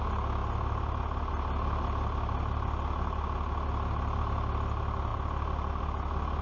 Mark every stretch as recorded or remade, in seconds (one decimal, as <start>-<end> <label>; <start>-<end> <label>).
0.0-6.4 recorded